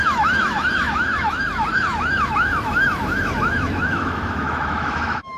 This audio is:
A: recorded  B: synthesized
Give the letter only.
B